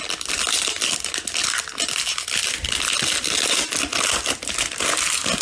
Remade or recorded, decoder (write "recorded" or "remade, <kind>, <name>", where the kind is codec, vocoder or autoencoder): recorded